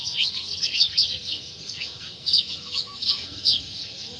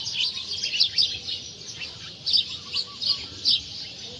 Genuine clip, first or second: second